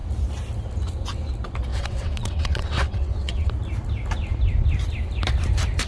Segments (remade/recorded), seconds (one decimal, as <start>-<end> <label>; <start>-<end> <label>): 0.0-1.7 recorded; 1.7-3.5 remade; 3.5-5.9 recorded

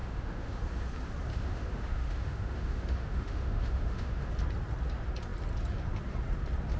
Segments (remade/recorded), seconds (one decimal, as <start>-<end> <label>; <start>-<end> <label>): 0.0-0.6 remade; 0.6-1.3 recorded; 1.3-4.3 remade; 4.3-6.8 recorded